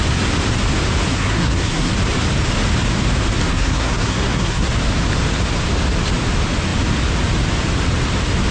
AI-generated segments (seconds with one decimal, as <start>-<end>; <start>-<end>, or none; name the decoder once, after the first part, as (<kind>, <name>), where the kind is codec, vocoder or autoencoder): 1.1-1.9 (codec, SNAC); 3.5-4.7